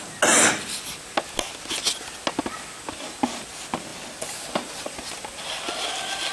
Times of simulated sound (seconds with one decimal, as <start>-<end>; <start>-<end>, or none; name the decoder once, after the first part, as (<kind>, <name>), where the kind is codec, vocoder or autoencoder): none